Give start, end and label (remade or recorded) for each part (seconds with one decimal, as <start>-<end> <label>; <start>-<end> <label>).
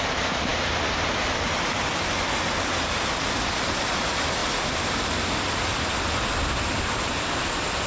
0.0-7.9 recorded